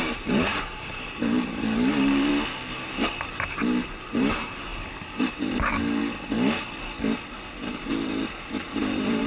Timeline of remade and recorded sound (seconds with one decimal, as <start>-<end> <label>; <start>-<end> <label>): 0.0-2.3 remade; 2.3-3.5 recorded; 3.5-4.7 remade; 4.7-5.3 recorded; 5.3-6.0 remade; 6.0-7.9 recorded; 7.9-9.3 remade

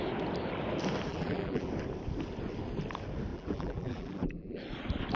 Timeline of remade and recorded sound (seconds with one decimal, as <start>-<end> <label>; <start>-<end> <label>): 0.0-1.1 recorded; 1.1-1.7 remade; 1.7-3.3 recorded; 3.3-4.6 remade; 4.6-5.2 recorded

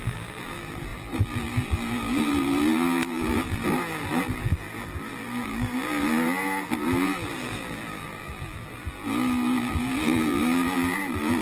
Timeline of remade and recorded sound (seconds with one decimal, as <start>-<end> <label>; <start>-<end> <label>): 0.0-11.4 remade